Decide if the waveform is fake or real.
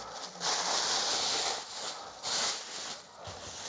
real